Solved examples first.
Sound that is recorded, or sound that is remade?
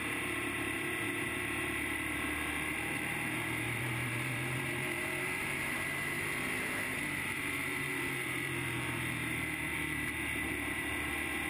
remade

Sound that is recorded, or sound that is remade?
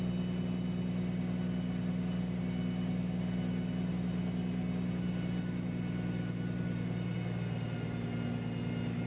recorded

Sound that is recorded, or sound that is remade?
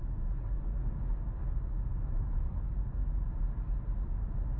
recorded